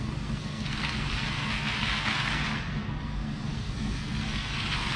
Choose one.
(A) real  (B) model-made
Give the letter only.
B